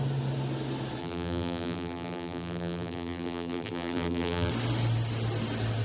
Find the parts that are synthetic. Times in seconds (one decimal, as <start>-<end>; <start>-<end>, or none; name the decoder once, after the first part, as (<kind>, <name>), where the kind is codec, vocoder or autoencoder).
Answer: 1.0-4.5 (vocoder, BigVGAN v2)